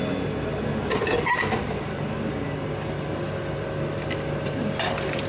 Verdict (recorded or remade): recorded